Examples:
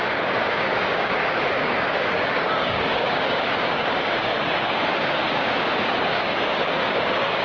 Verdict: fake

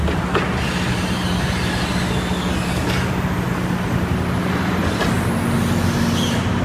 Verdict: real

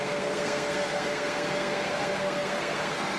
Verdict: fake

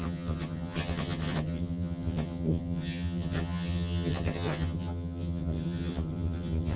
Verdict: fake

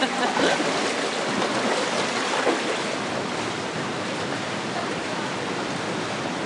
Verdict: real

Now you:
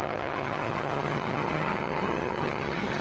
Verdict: fake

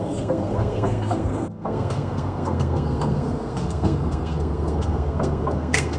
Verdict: fake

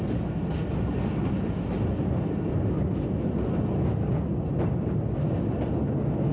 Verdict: real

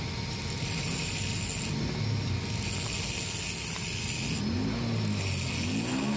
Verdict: real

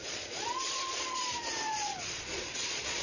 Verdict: fake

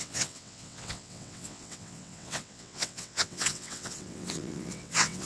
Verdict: fake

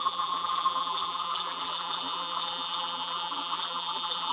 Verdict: fake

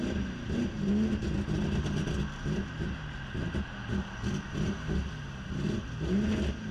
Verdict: real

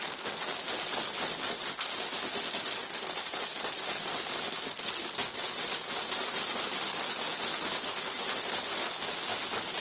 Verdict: real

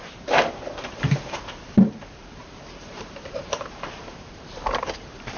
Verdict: fake